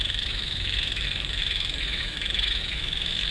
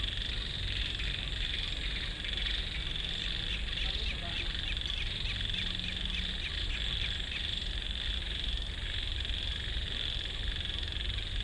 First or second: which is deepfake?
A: first